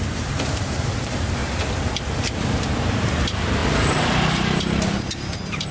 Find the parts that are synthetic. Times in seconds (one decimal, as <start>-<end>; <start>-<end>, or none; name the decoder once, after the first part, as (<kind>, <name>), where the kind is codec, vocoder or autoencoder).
0.0-1.4 (vocoder, BigVGAN v2); 2.8-5.7